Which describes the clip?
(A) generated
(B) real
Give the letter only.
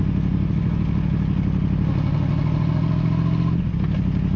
B